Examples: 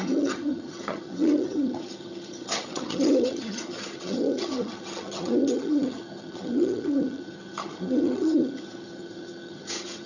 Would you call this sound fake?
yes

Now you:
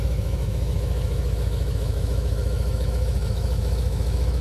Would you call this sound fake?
yes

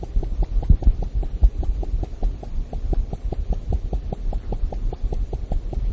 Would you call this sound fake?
no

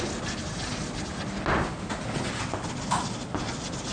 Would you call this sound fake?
no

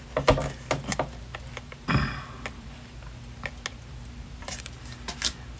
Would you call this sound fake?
no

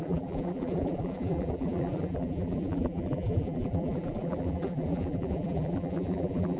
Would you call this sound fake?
yes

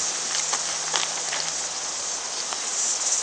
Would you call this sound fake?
no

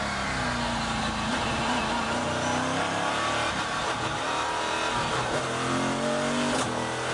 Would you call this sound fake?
no